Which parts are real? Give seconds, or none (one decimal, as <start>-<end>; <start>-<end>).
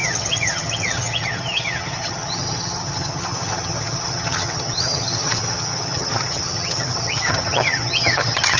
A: none